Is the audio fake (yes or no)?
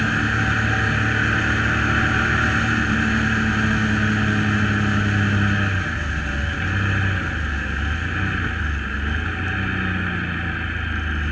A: no